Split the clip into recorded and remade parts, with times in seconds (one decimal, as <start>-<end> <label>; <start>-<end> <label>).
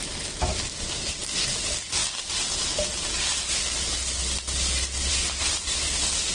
0.0-6.3 recorded